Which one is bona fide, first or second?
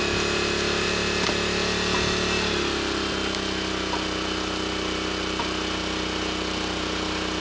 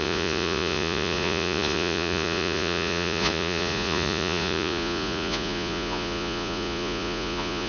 first